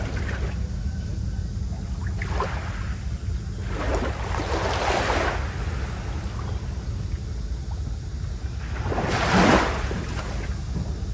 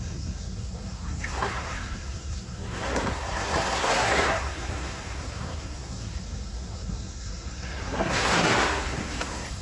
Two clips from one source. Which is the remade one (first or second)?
second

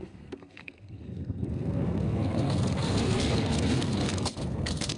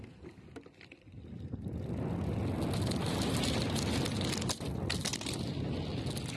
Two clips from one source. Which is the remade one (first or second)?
first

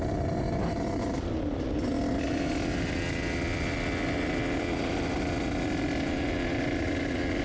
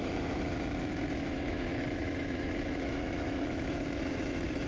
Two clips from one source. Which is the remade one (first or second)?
second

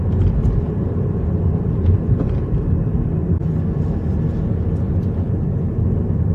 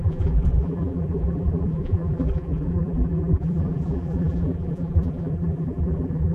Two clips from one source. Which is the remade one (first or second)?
second